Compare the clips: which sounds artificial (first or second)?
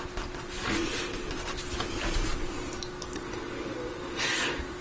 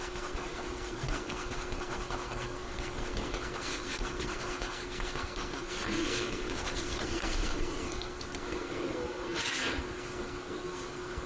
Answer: second